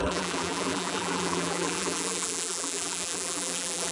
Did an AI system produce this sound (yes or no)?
yes